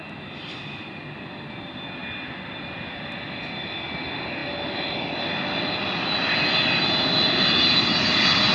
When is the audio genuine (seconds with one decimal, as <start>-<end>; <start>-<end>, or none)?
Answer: 0.0-8.5